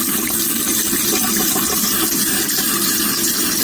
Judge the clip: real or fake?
real